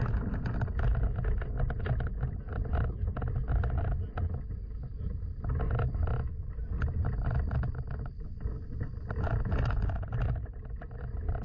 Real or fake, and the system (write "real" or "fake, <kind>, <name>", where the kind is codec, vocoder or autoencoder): real